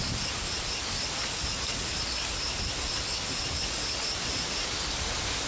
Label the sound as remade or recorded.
recorded